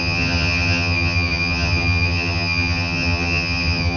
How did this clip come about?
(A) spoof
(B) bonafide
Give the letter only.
A